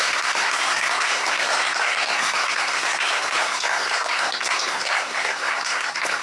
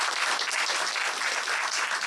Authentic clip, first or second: second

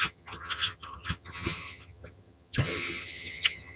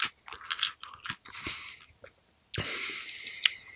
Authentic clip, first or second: second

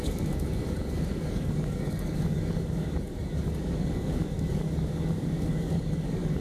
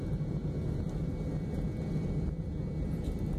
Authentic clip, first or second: second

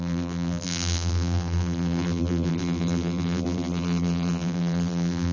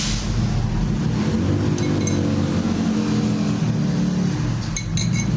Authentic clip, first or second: second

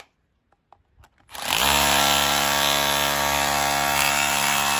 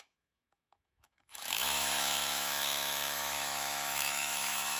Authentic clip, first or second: first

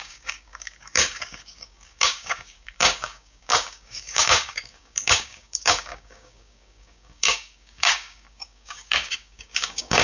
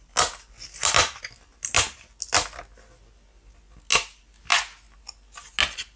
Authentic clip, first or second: second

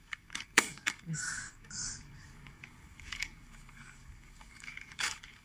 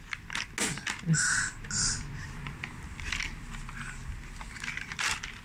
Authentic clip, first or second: second